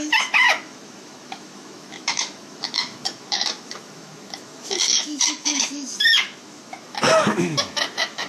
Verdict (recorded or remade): remade